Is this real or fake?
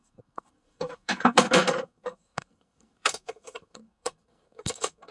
fake